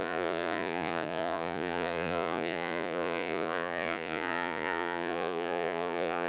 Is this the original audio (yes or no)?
no